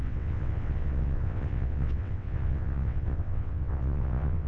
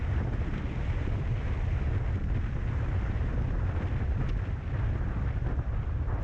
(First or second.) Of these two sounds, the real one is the second